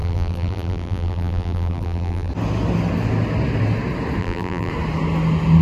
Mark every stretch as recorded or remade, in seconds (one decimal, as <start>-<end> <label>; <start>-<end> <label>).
0.0-2.3 remade; 2.3-4.2 recorded; 4.2-4.7 remade; 4.7-5.6 recorded

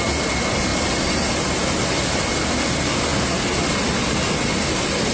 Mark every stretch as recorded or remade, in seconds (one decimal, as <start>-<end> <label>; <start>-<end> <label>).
0.0-5.1 recorded

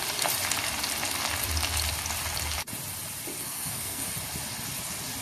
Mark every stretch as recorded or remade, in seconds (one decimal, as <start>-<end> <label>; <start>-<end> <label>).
0.0-3.4 recorded; 3.4-4.0 remade; 4.0-5.2 recorded

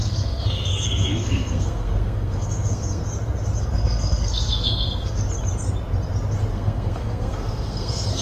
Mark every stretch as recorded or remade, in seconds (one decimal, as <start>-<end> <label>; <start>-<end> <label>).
0.0-3.0 remade; 3.0-3.6 recorded; 3.6-5.2 remade; 5.2-6.5 recorded; 6.5-8.2 remade

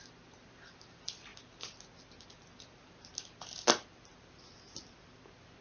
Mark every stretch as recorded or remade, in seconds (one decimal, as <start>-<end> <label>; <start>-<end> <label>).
0.0-5.6 recorded

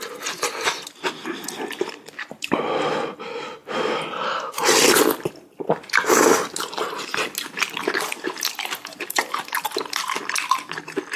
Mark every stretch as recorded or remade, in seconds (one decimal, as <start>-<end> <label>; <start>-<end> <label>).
0.0-1.2 recorded; 1.2-2.5 remade; 2.5-8.1 recorded; 8.1-10.4 remade; 10.4-11.2 recorded

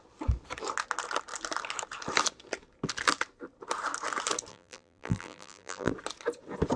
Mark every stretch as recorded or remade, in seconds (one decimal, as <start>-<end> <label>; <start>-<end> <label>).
0.0-4.5 recorded; 4.5-5.9 remade; 5.9-6.8 recorded